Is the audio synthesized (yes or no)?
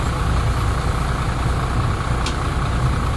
no